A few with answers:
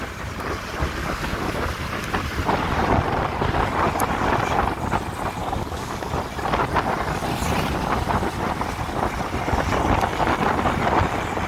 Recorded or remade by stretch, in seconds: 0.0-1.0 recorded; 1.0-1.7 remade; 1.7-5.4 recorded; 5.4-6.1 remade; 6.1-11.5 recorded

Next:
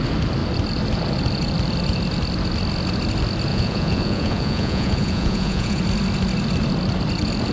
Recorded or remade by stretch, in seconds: 0.0-3.5 recorded; 3.5-5.8 remade; 5.8-7.5 recorded